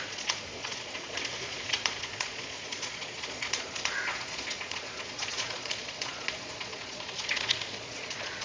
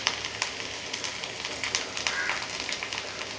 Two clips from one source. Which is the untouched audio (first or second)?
second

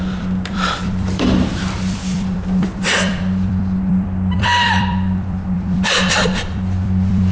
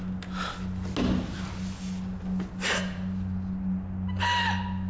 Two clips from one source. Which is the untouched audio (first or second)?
second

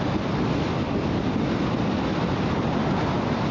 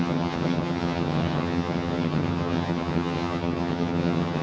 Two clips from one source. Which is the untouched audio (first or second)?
first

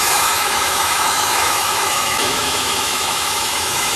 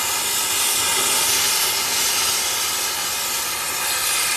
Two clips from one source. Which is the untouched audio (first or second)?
second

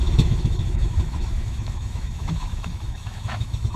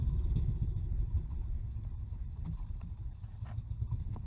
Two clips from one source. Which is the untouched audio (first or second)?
second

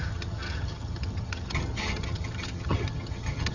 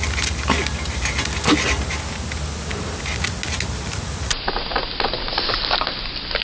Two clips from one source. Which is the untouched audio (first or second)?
second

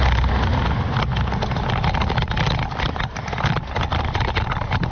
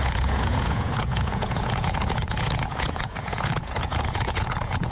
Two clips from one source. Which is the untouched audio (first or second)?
first